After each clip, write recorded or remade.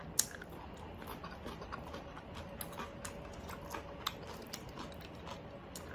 recorded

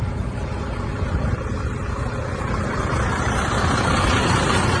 recorded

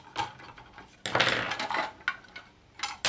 recorded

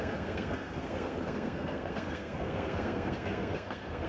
remade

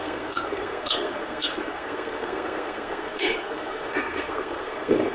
remade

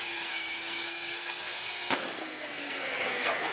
remade